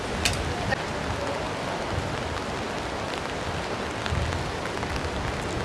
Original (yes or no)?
yes